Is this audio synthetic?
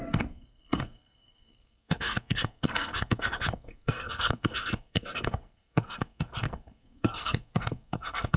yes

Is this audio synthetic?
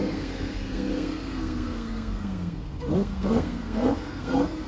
yes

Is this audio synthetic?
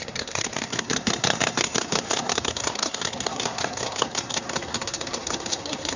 yes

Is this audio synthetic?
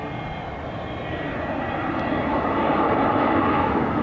no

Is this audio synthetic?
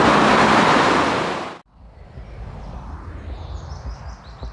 no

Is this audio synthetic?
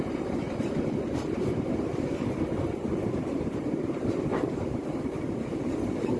no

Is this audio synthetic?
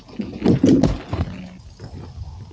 no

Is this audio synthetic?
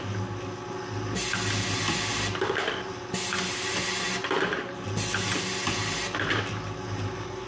no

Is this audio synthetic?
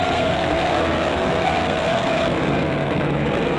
yes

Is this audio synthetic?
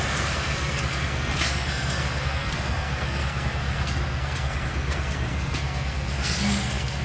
yes